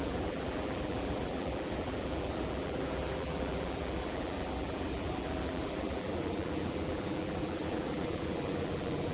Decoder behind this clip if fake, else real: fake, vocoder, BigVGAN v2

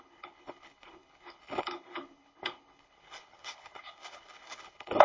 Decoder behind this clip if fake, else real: fake, codec, HILCodec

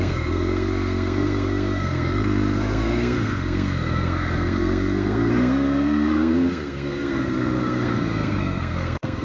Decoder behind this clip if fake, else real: fake, codec, SNAC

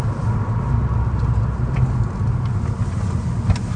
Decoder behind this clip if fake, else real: real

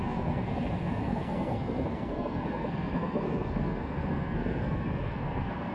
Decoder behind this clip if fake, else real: fake, codec, SNAC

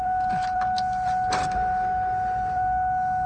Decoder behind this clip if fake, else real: real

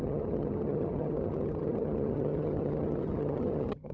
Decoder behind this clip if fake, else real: fake, vocoder, HiFi-GAN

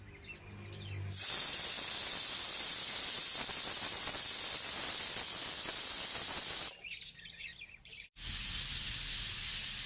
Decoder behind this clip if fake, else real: real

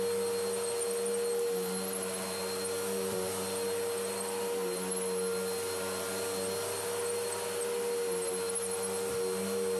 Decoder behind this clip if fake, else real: real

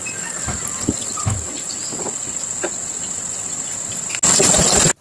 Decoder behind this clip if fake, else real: real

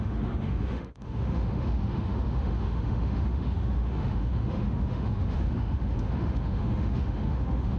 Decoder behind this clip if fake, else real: fake, autoencoder, DAC-VAE